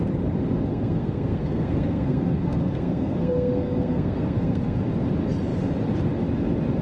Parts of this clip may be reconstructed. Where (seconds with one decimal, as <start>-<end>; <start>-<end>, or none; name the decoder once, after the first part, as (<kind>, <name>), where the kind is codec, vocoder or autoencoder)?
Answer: 0.7-4.8 (codec, SNAC)